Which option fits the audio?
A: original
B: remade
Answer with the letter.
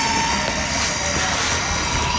A